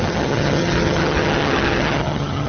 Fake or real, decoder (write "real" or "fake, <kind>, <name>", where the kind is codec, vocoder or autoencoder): fake, vocoder, HiFi-GAN